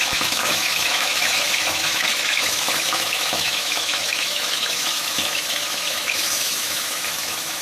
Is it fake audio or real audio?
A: fake